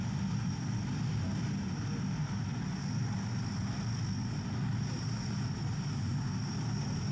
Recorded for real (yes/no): yes